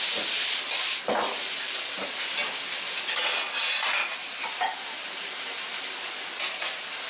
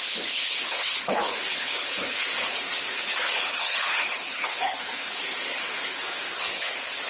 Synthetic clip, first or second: second